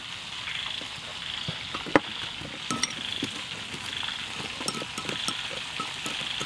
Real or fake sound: real